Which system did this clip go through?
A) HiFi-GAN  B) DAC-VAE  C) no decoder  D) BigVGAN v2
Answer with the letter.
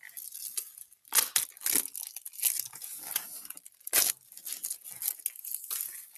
C